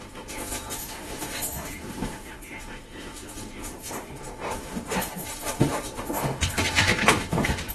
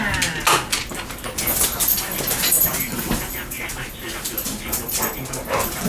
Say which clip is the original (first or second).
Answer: second